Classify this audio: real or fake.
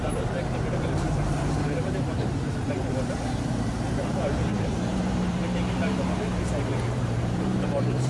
fake